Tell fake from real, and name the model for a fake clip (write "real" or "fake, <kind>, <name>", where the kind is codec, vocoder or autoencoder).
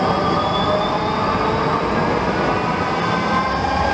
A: real